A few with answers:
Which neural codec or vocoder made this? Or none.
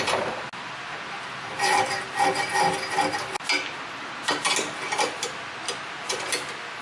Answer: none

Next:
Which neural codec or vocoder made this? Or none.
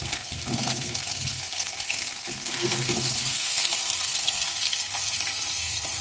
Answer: codec, SNAC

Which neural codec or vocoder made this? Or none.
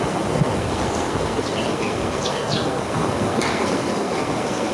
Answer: codec, SNAC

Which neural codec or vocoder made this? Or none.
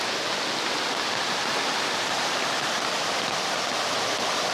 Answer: none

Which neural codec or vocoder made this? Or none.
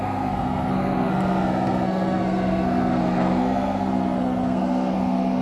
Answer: codec, SNAC